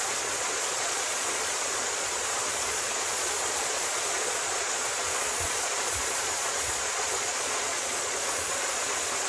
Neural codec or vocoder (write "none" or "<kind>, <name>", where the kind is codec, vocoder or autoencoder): vocoder, Vocos